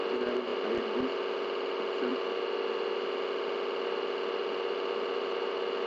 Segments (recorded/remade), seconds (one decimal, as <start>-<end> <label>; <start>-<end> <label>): 0.0-5.9 recorded